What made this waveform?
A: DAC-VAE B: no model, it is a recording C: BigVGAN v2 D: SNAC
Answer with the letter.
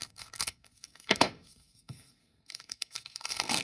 D